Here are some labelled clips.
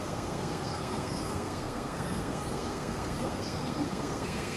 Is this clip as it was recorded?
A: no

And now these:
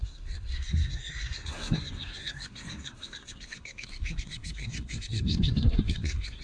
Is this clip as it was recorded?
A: no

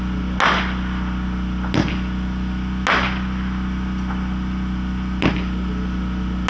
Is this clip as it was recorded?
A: yes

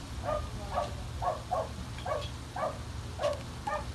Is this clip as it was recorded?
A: yes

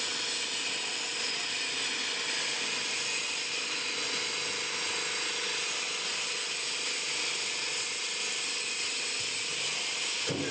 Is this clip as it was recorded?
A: yes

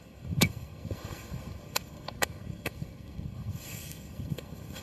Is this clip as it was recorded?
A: no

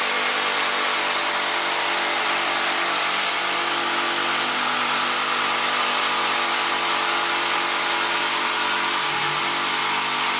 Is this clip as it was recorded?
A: yes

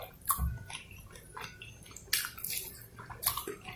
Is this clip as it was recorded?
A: yes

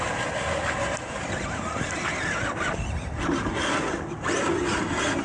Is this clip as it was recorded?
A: yes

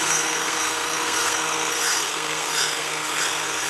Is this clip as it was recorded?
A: no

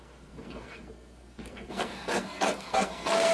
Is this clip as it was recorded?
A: no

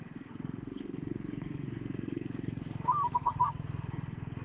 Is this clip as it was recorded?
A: no